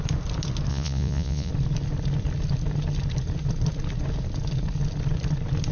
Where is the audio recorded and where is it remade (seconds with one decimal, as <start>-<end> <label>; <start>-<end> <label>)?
0.0-0.7 recorded; 0.7-1.5 remade; 1.5-5.7 recorded